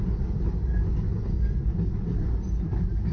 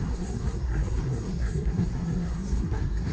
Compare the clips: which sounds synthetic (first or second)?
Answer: second